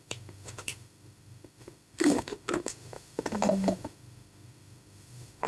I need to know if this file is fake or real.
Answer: fake